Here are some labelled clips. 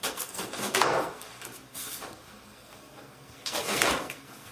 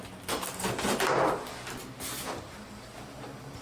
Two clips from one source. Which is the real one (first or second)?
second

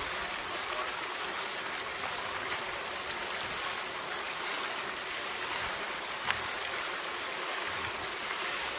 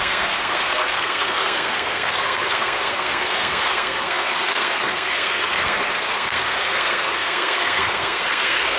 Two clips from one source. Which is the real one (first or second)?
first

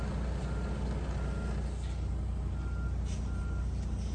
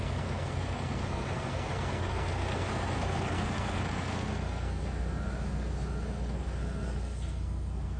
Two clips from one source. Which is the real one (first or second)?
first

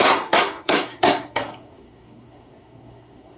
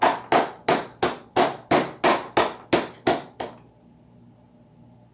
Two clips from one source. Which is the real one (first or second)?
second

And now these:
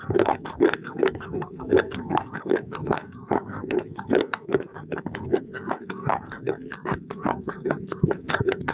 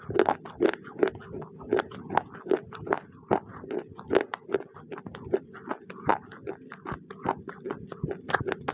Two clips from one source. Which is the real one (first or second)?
second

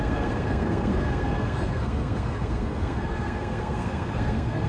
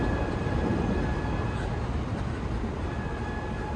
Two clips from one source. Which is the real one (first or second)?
second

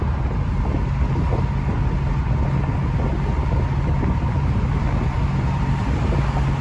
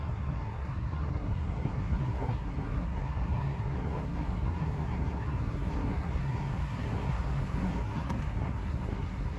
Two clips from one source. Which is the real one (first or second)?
first